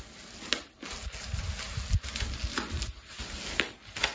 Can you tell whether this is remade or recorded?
recorded